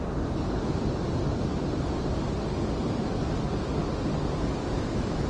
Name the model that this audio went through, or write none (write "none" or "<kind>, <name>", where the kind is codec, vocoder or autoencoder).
none